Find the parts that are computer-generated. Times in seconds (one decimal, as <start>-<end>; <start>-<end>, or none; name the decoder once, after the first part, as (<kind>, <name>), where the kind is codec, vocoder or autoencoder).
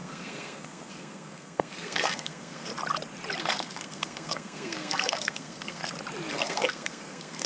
0.0-2.7 (codec, SNAC); 3.4-5.8; 6.3-7.5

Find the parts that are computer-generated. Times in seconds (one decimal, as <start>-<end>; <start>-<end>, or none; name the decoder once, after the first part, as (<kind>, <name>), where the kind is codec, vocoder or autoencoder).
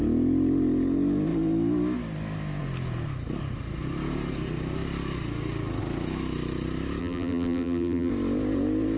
7.0-8.1 (vocoder, BigVGAN v2)